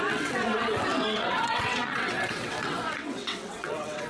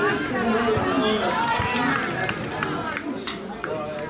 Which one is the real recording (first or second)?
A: second